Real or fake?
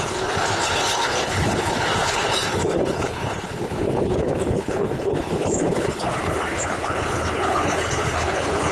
fake